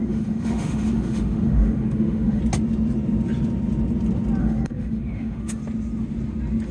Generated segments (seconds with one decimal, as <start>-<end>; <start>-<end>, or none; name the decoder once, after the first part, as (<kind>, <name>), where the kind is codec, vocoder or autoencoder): 0.0-2.4 (autoencoder, DAC-VAE); 4.4-5.6